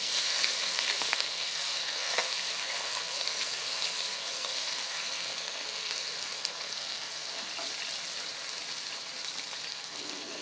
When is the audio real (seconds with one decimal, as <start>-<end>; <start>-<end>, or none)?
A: 7.5-9.7